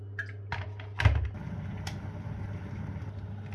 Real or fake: real